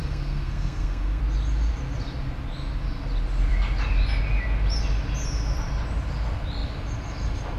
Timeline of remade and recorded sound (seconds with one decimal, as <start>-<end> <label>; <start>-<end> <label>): 0.0-1.2 remade; 1.2-7.6 recorded